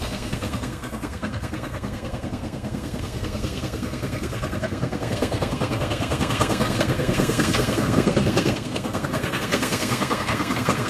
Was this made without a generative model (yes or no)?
no